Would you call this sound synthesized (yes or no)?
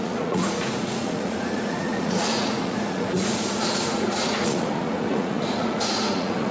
yes